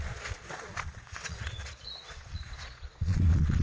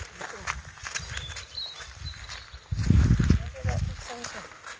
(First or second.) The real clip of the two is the second